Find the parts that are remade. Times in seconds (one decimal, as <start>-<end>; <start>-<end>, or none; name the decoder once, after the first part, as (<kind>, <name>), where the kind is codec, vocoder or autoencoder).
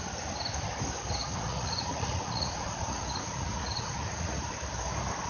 1.2-4.4 (vocoder, Vocos)